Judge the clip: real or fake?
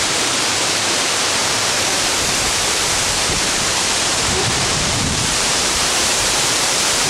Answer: fake